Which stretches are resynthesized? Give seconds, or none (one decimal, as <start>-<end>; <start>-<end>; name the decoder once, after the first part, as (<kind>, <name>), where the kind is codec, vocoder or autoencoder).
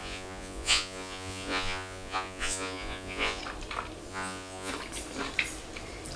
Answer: 0.0-3.4 (vocoder, Vocos); 4.1-4.7